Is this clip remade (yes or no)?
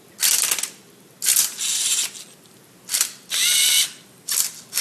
no